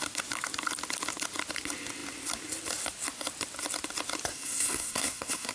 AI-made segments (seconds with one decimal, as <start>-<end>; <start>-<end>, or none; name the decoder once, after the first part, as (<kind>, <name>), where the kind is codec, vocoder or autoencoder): 4.3-5.5 (codec, SNAC)